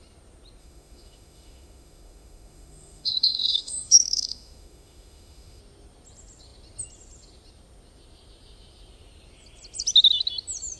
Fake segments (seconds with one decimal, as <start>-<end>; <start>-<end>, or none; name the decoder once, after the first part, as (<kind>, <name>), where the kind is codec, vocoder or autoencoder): 0.6-5.6 (autoencoder, DAC-VAE)